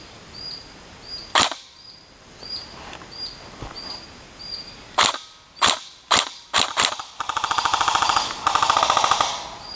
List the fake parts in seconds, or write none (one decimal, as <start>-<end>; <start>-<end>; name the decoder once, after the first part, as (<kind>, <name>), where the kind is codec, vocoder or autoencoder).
none